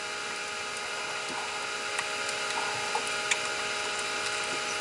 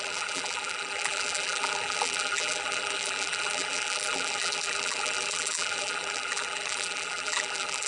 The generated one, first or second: second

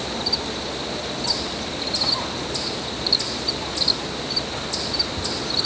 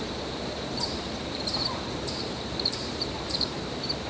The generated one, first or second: second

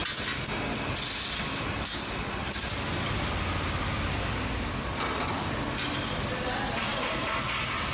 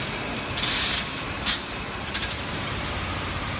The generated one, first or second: second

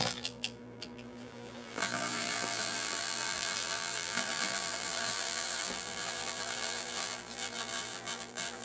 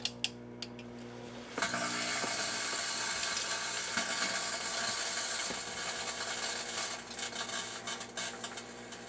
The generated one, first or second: first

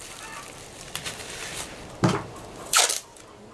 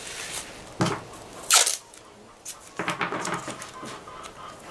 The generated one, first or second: first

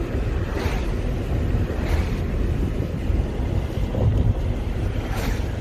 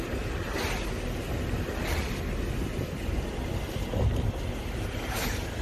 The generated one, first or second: first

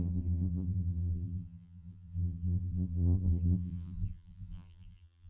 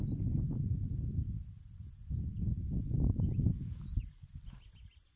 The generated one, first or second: first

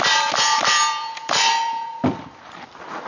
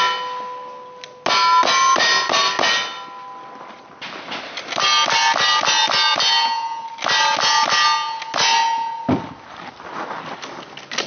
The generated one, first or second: first